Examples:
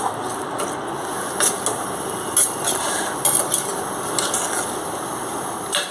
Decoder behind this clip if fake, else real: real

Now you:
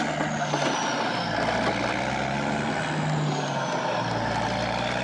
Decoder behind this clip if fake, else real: real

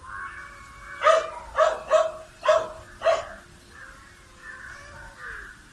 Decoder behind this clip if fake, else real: real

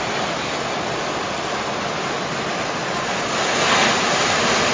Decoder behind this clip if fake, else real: real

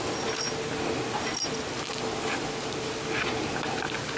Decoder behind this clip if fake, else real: real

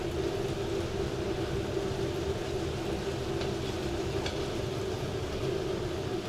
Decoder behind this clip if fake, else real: real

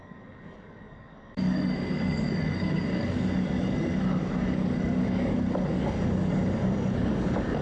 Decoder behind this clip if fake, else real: fake, codec, DAC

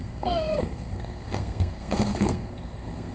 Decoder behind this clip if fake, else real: fake, codec, SNAC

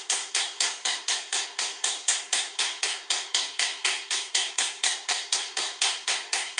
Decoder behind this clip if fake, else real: fake, codec, SNAC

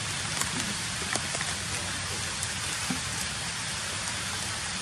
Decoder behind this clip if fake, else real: real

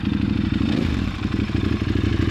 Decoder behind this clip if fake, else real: fake, vocoder, BigVGAN v2